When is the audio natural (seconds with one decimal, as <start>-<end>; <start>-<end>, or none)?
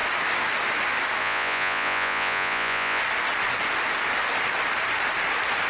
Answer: 0.0-1.2; 3.0-5.7